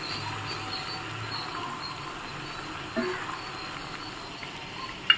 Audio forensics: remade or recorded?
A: recorded